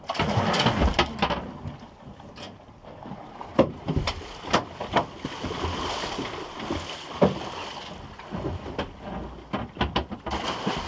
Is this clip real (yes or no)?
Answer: yes